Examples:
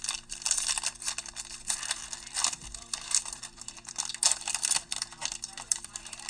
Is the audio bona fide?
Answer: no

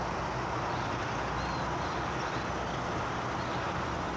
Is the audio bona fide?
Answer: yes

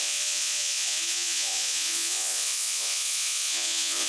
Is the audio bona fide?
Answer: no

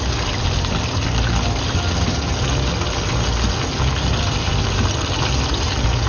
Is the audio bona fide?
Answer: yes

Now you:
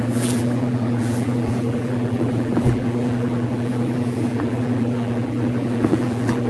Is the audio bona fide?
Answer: no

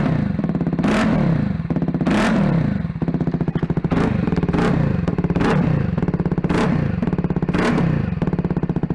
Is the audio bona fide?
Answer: yes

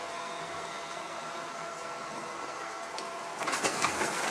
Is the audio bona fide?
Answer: no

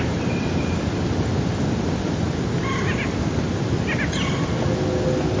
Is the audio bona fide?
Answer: yes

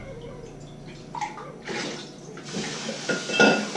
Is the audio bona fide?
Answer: yes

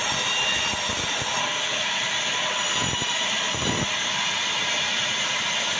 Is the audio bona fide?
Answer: yes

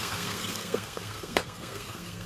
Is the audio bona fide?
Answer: no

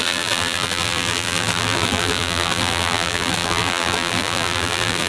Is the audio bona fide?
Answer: no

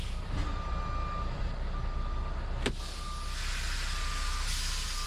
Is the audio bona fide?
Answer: yes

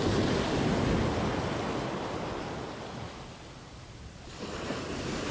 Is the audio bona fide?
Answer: yes